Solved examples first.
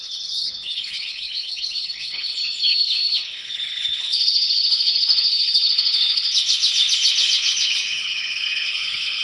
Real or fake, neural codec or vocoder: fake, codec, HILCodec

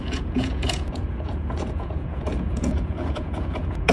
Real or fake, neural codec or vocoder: fake, vocoder, Vocos